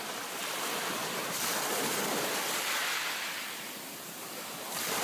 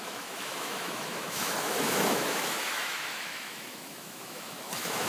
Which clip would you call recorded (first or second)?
first